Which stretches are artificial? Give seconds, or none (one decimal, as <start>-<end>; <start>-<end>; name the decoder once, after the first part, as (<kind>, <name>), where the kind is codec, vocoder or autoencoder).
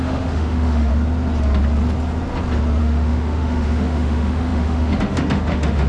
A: 0.0-0.9 (autoencoder, DAC-VAE); 2.8-5.9